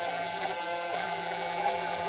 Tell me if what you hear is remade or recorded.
remade